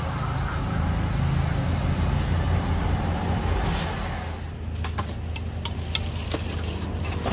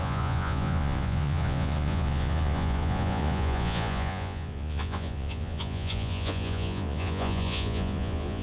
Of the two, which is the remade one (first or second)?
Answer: second